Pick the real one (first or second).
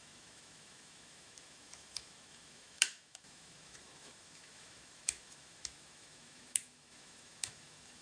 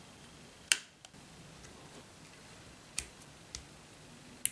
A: second